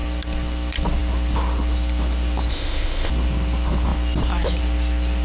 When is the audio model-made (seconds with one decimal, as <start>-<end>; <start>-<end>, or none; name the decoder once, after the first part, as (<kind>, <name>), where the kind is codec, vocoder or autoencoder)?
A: 2.5-3.1 (codec, ZipCodec)